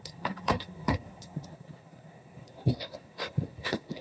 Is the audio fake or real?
fake